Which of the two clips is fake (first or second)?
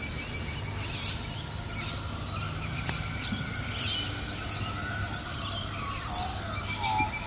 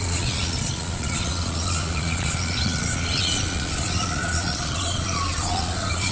second